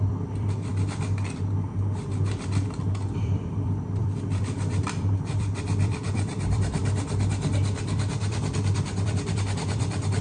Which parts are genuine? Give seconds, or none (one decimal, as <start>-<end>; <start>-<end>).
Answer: 0.7-3.1; 6.8-7.5